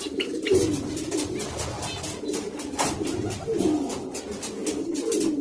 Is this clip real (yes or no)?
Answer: yes